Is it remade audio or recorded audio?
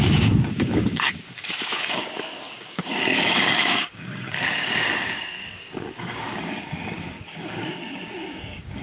remade